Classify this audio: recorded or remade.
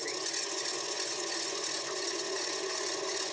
remade